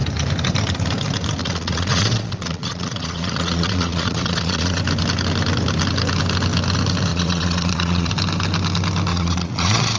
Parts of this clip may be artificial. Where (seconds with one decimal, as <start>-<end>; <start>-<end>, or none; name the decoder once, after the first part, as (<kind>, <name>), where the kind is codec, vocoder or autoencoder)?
1.4-4.8 (vocoder, Vocos); 7.1-8.1; 9.1-10.0

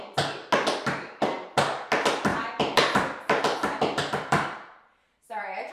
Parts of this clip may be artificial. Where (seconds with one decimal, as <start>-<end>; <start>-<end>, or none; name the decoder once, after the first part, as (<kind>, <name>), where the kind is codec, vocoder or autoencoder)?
2.3-5.7 (vocoder, BigVGAN v2)

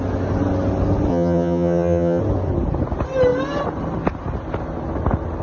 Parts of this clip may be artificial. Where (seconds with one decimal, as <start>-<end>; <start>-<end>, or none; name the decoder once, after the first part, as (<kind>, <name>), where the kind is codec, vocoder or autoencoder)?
1.1-2.2 (vocoder, HiFi-GAN)

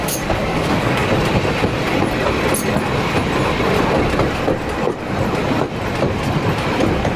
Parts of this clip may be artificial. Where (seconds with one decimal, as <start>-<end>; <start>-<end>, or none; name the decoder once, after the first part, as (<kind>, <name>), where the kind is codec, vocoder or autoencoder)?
0.0-1.1 (codec, DAC)

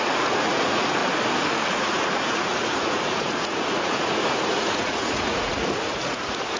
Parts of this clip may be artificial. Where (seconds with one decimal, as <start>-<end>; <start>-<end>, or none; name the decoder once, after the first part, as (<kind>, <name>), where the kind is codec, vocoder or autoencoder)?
0.0-1.0 (vocoder, Vocos); 1.7-6.6